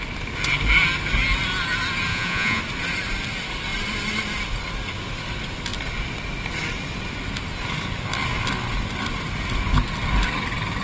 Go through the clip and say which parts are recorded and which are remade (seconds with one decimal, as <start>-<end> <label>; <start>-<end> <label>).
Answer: 0.0-2.1 recorded; 2.1-2.6 remade; 2.6-10.8 recorded